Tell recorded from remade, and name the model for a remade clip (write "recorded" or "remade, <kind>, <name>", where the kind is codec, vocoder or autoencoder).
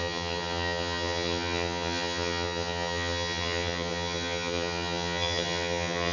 remade, vocoder, HiFi-GAN